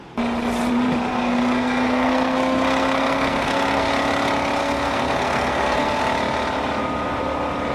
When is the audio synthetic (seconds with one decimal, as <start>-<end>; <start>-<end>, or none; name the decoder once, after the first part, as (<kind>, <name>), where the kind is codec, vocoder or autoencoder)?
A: 1.1-3.9 (codec, SNAC); 4.6-6.0